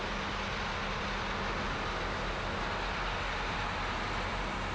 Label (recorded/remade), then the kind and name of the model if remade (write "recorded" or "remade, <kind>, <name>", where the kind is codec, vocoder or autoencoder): recorded